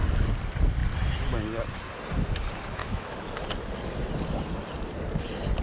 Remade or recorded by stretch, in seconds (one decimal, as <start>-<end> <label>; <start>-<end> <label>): 0.0-2.8 recorded; 2.8-3.4 remade; 3.4-5.6 recorded